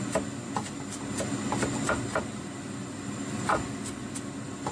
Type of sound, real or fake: real